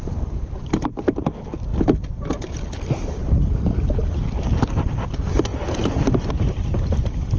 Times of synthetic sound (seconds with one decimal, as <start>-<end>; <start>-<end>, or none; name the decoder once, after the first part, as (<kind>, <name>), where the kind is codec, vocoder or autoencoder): 1.7-3.3 (vocoder, BigVGAN v2); 5.5-6.3